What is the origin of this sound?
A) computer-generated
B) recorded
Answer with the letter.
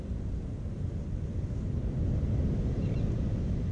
B